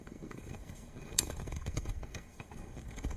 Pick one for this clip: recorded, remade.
remade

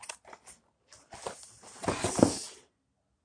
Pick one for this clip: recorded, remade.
recorded